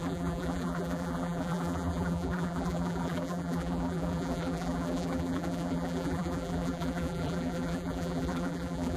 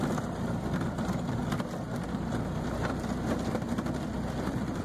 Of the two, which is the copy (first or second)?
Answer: first